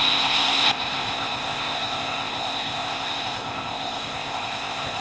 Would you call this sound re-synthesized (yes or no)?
yes